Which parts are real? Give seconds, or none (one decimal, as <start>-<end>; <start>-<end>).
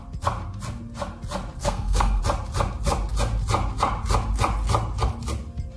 0.0-1.6; 2.2-5.8